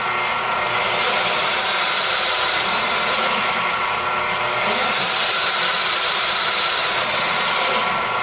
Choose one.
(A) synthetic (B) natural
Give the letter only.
B